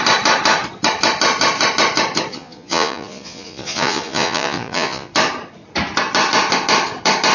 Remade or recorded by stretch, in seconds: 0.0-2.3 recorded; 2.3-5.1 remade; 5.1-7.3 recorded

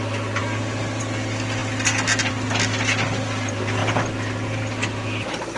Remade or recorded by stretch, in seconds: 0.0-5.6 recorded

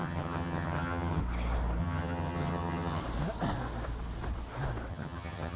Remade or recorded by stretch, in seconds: 0.0-1.2 remade; 1.2-1.8 recorded; 1.8-3.0 remade; 3.0-4.9 recorded; 4.9-5.6 remade